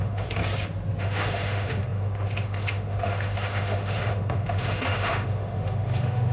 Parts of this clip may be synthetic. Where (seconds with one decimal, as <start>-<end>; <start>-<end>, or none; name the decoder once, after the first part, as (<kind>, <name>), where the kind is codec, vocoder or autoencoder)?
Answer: 0.0-0.4 (autoencoder, DAC-VAE); 1.0-6.3